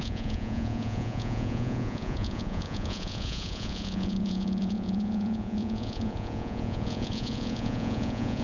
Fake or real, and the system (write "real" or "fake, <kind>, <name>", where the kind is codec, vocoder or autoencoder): fake, vocoder, Vocos